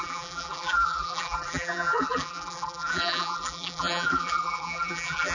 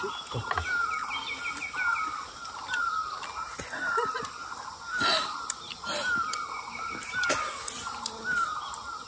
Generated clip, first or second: first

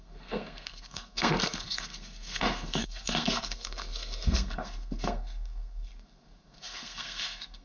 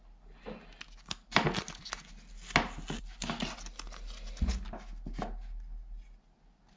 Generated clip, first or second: first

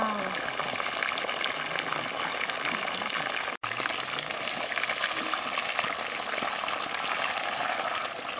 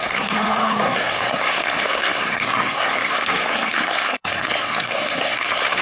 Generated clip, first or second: second